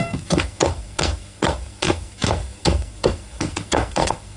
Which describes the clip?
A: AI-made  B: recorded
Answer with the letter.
A